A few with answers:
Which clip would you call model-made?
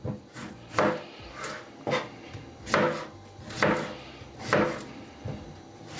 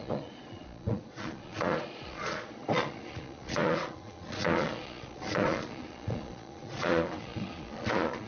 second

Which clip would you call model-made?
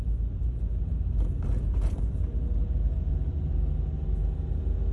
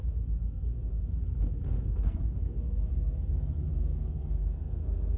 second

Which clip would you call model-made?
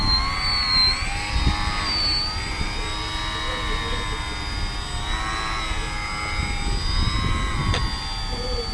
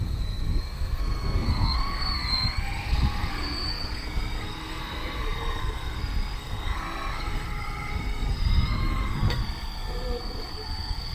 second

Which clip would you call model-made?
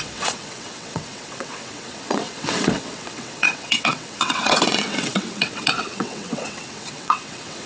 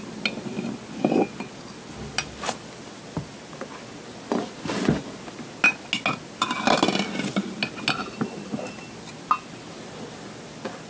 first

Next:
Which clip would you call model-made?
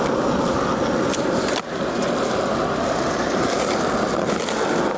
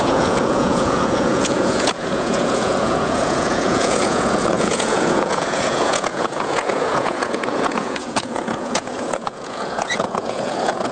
second